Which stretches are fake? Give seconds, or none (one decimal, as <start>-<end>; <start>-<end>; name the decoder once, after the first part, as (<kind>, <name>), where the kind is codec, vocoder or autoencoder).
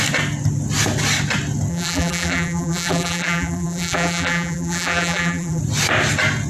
1.7-5.6 (vocoder, BigVGAN v2)